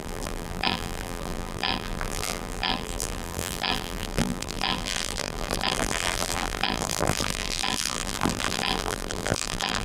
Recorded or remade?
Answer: remade